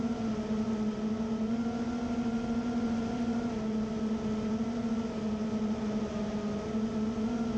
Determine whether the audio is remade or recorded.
recorded